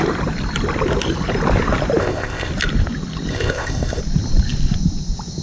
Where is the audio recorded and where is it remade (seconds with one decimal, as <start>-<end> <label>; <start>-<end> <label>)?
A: 0.0-2.0 recorded; 2.0-2.5 remade; 2.5-3.3 recorded; 3.3-4.0 remade; 4.0-5.4 recorded